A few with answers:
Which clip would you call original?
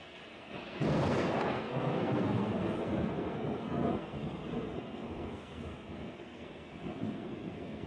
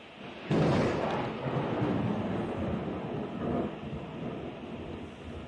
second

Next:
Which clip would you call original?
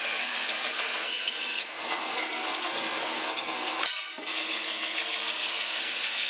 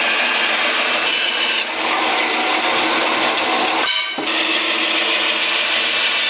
second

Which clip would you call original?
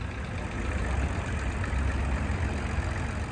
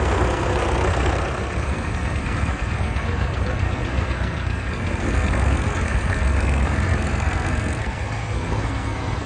first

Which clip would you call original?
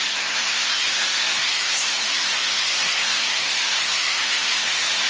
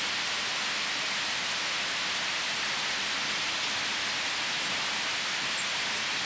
second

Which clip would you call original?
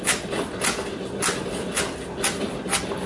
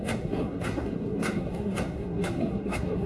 first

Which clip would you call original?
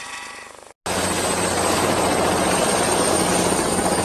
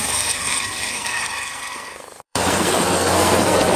first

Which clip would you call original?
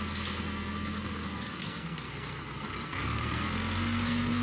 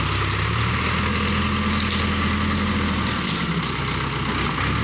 second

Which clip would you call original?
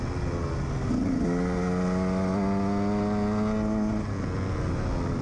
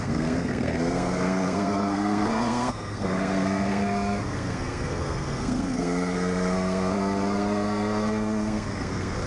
first